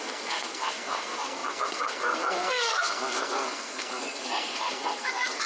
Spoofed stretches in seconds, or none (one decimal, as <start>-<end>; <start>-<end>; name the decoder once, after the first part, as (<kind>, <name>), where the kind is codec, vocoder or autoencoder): 0.0-5.5 (codec, SNAC)

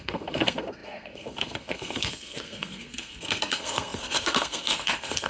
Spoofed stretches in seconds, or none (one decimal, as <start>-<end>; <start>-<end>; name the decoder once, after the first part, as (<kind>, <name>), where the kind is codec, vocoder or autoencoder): 0.0-5.3 (codec, SNAC)

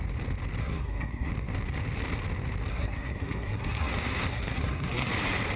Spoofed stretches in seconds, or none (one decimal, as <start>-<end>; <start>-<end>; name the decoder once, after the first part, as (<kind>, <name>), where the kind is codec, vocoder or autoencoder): 0.6-1.3 (codec, SNAC); 2.7-3.9; 4.3-5.1

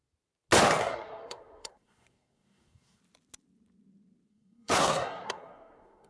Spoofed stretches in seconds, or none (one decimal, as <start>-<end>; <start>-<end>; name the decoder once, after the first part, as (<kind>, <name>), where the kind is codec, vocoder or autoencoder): 0.8-3.0 (codec, SNAC); 4.3-6.1

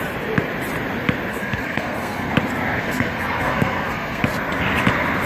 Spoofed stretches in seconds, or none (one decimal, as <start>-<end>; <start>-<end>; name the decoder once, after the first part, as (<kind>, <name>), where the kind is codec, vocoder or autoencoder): 1.3-2.3 (codec, SNAC); 2.8-4.2

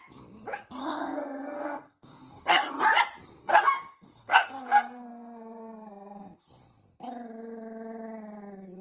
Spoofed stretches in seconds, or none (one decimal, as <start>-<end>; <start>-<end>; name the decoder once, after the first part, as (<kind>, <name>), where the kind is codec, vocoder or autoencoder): 0.8-2.8 (codec, SNAC); 3.4-6.4